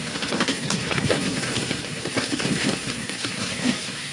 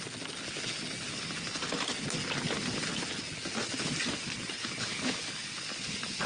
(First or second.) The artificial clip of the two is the first